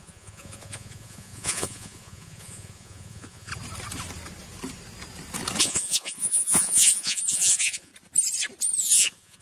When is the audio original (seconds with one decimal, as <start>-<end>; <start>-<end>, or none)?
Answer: 3.5-5.6; 7.9-8.8